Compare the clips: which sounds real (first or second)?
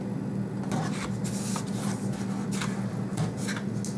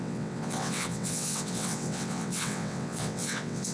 first